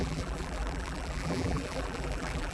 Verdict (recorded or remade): remade